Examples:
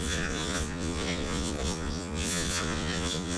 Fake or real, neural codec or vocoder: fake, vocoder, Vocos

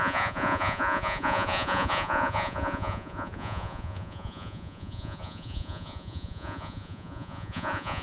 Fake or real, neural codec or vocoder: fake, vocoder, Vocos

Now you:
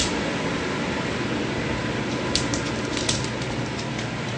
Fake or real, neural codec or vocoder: real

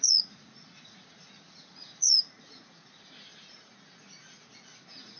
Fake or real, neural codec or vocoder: fake, vocoder, Vocos